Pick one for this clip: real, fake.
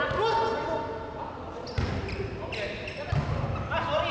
real